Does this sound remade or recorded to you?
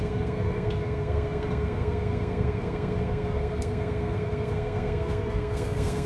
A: remade